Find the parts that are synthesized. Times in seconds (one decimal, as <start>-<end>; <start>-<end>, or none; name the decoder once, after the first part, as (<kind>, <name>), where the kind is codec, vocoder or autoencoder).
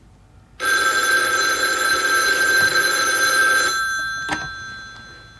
none